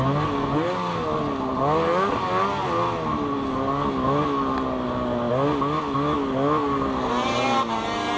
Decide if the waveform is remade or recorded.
recorded